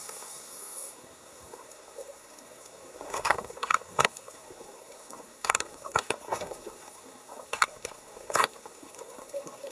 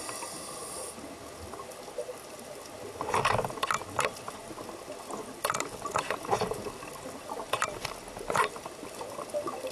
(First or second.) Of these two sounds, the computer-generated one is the first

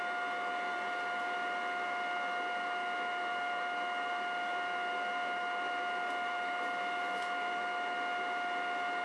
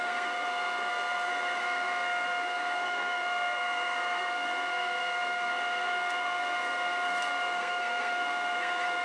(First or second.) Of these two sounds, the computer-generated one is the second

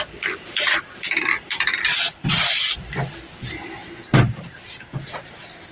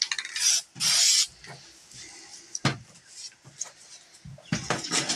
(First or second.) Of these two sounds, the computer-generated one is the first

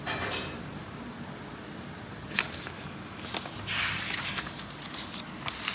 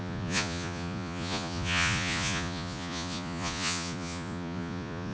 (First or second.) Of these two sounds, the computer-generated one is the second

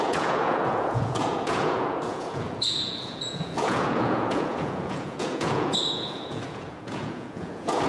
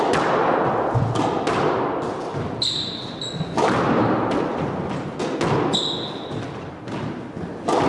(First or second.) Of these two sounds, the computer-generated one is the first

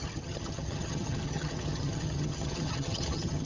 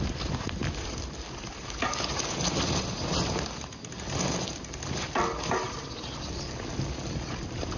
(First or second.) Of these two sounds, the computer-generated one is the first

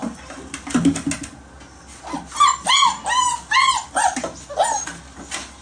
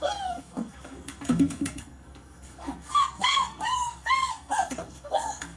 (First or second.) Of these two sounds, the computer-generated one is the second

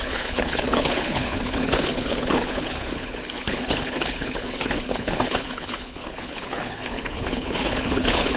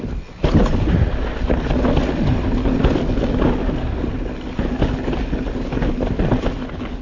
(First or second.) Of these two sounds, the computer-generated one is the first